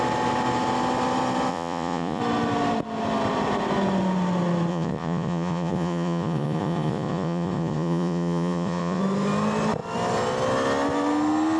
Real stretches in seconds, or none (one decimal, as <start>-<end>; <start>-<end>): 0.0-1.5; 2.2-4.7; 9.0-11.6